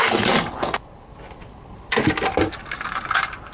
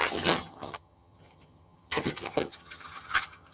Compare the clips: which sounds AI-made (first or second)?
second